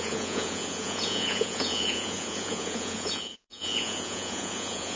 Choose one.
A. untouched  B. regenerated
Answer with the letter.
B